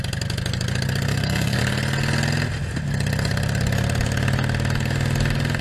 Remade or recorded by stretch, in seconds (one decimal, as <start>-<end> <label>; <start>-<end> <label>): 0.0-1.1 recorded; 1.1-1.6 remade; 1.6-5.6 recorded